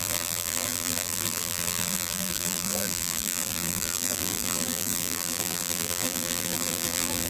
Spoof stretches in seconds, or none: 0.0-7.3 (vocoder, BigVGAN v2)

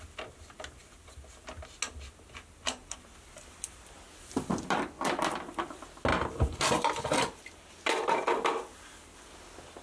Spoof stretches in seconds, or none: 2.8-4.9 (vocoder, BigVGAN v2); 6.1-7.7